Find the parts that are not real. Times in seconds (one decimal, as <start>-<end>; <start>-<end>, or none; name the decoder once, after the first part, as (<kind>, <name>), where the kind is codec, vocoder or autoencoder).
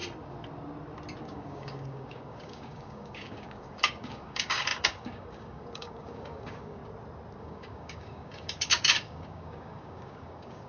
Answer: 1.2-6.8 (codec, DAC); 7.4-10.7